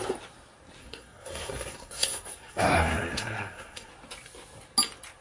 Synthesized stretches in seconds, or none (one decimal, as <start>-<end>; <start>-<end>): 0.8-3.9

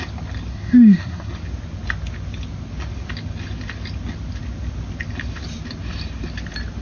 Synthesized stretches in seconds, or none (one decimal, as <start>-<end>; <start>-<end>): 0.5-1.3